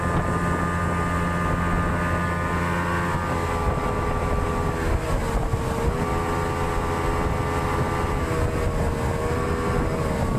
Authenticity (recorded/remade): recorded